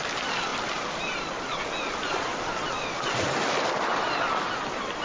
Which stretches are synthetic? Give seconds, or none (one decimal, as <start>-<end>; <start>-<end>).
none